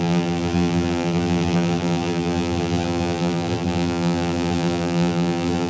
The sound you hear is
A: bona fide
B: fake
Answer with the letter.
B